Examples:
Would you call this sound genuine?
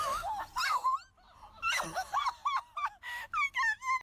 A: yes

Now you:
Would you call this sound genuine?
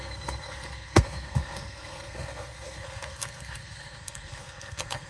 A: no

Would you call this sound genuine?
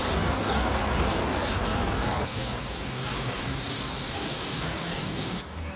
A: no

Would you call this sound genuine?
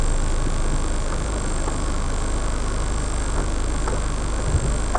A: yes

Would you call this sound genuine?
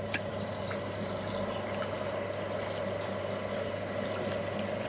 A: yes